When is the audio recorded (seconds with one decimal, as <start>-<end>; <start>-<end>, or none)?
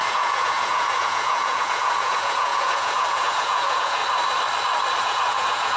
4.0-5.0